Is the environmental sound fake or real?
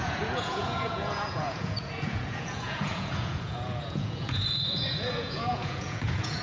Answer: fake